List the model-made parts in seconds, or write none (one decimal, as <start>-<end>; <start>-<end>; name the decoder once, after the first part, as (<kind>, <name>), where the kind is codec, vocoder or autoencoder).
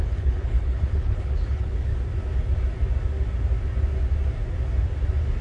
0.0-1.9 (codec, HILCodec)